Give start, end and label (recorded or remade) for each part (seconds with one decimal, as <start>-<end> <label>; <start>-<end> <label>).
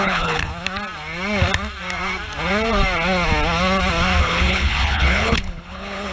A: 0.0-0.5 remade; 0.5-4.2 recorded; 4.2-6.1 remade